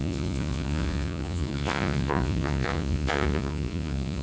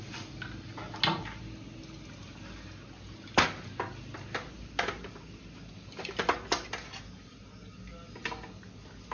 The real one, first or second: second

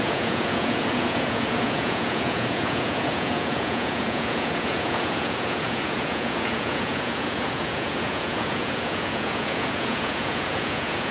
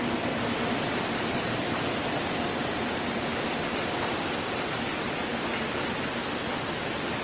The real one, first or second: second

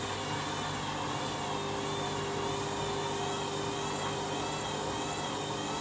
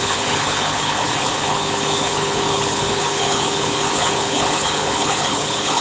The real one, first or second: first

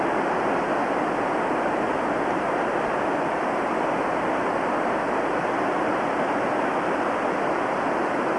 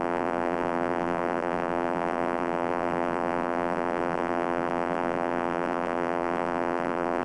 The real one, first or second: first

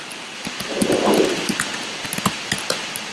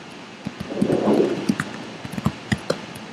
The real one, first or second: first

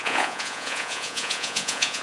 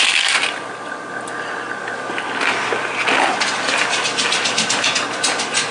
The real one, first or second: second